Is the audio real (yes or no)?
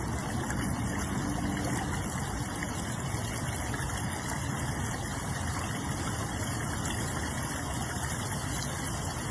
yes